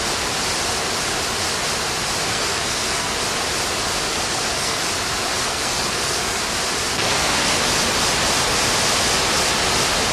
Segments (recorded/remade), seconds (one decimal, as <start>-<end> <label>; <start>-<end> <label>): 0.0-2.3 recorded; 2.3-3.2 remade; 3.2-4.1 recorded; 4.1-4.8 remade; 4.8-5.3 recorded; 5.3-6.4 remade; 6.4-6.9 recorded; 6.9-7.6 remade; 7.6-10.1 recorded